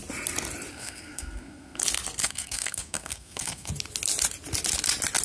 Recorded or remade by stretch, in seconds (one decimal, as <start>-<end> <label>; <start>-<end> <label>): 0.0-0.7 recorded; 0.7-1.8 remade; 1.8-2.2 recorded; 2.2-3.7 remade; 3.7-5.2 recorded